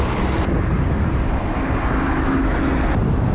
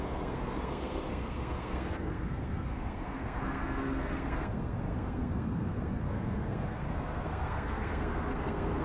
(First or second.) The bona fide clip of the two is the first